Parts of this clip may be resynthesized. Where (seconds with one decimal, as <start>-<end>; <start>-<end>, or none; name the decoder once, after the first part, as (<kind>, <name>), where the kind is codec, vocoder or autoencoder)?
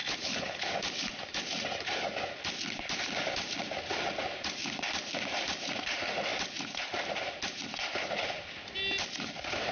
0.0-0.7 (codec, HILCodec)